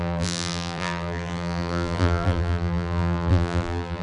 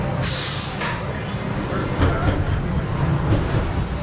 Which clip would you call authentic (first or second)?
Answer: second